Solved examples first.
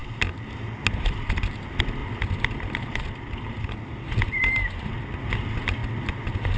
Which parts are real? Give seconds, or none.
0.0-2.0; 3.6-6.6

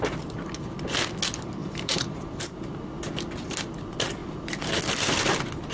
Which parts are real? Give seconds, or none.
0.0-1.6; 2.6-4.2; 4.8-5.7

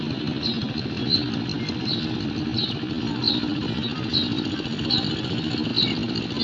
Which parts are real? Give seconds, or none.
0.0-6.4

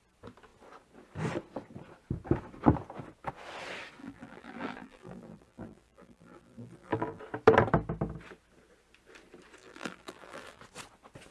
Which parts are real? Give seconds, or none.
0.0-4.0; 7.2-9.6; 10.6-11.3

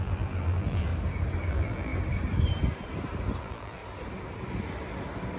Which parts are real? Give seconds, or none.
0.9-1.5; 1.9-3.4; 3.8-5.4